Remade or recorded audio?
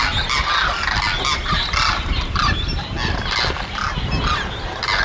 recorded